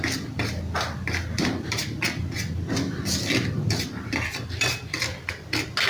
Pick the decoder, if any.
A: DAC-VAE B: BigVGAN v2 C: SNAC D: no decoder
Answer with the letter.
D